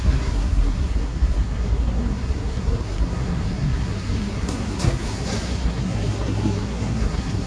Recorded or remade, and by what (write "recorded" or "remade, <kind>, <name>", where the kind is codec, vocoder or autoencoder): remade, codec, SNAC